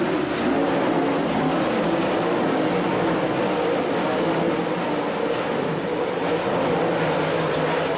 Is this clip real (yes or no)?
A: yes